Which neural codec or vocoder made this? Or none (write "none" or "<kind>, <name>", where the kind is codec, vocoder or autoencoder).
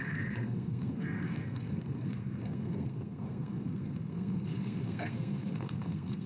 codec, SNAC